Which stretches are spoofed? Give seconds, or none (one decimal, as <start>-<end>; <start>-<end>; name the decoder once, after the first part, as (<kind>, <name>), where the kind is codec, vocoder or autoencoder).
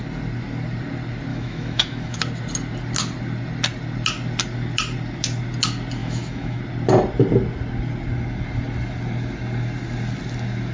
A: 1.3-2.2 (autoencoder, DAC-VAE); 6.0-6.6